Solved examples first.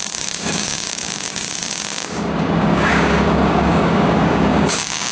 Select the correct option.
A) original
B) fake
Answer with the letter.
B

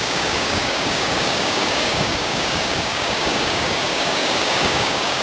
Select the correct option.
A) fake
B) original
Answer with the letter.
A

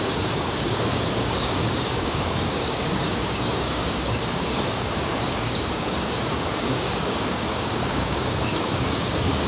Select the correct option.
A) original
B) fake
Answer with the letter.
B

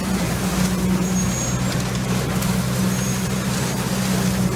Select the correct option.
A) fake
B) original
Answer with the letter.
B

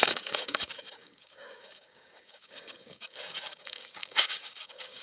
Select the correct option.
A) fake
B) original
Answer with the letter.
A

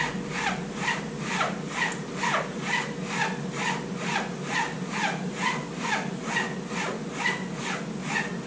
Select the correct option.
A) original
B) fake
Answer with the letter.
A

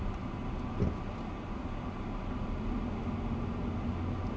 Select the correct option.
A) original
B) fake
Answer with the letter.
A